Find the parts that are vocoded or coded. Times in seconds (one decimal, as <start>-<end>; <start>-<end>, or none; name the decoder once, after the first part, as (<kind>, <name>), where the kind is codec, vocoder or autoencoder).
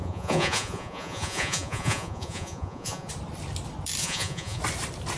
0.0-3.1 (vocoder, Vocos); 4.0-4.6